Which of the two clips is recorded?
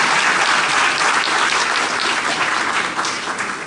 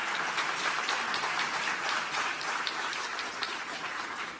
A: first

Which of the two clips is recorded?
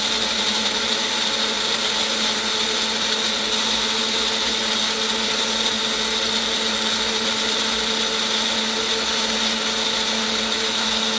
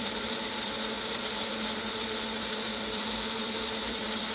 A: first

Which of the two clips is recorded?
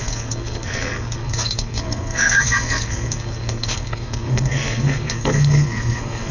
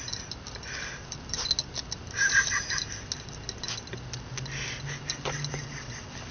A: second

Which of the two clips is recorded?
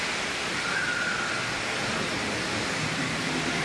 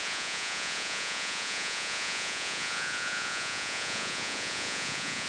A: first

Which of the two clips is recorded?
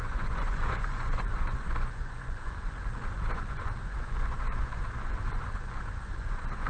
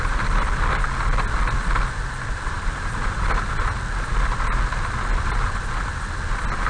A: second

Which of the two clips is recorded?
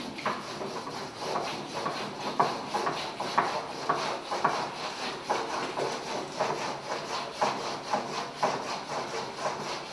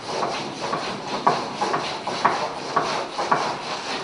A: first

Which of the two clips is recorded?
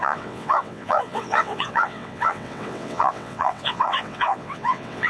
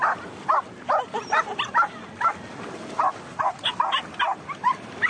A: second